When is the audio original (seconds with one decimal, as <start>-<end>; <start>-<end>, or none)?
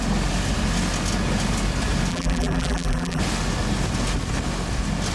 0.0-2.1; 3.2-5.1